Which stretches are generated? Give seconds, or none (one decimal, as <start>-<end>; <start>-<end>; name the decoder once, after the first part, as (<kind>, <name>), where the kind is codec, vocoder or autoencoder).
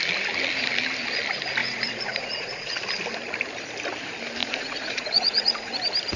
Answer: 1.6-2.7 (vocoder, Vocos); 4.4-5.7